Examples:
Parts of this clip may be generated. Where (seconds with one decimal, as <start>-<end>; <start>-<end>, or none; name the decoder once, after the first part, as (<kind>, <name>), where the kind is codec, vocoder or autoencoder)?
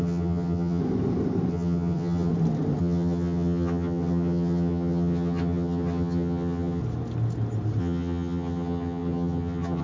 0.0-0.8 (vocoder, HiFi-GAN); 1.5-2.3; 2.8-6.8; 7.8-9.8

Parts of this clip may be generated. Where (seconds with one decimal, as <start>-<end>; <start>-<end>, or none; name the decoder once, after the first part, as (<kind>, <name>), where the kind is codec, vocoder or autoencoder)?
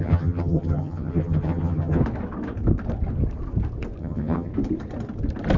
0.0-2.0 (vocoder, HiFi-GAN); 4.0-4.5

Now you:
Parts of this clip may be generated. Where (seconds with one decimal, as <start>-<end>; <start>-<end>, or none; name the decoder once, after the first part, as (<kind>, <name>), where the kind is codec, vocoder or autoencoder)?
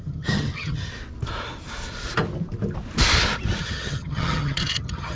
0.0-0.9 (vocoder, HiFi-GAN); 3.6-5.2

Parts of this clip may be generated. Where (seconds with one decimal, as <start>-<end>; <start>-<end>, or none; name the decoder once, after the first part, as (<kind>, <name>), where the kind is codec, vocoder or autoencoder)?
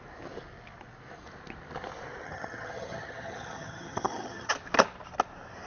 2.2-4.5 (vocoder, HiFi-GAN)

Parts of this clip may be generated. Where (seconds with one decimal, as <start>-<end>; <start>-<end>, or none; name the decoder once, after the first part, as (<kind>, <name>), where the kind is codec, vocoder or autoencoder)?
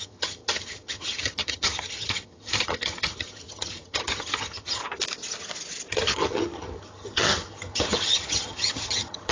0.0-4.8 (vocoder, HiFi-GAN); 5.9-9.3